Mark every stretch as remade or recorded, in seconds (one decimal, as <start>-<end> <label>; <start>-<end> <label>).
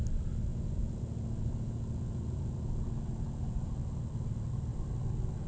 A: 0.0-0.5 recorded; 0.5-3.8 remade; 3.8-5.5 recorded